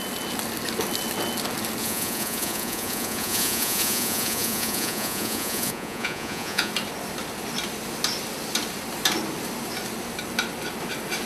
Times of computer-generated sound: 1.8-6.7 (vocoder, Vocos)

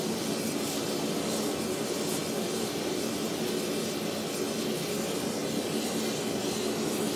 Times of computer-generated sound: none

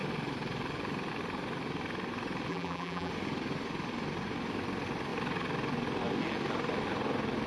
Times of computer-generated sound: 2.5-3.1 (vocoder, BigVGAN v2)

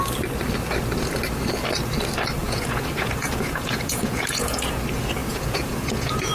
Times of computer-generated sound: 2.4-4.8 (vocoder, Vocos); 5.2-6.3

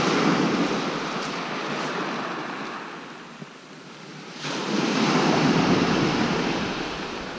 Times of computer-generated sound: 4.1-6.3 (vocoder, BigVGAN v2)

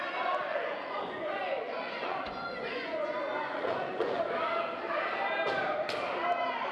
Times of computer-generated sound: 0.5-4.2 (vocoder, Vocos)

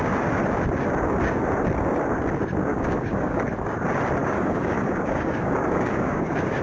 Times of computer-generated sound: 2.7-3.4 (codec, DAC); 4.2-6.6